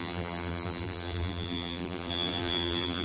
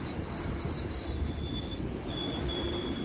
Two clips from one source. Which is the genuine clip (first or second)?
second